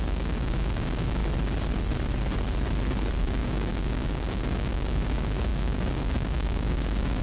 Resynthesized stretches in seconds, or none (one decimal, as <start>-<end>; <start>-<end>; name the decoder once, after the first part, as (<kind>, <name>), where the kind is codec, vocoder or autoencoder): 0.0-1.2 (codec, DAC); 3.2-7.2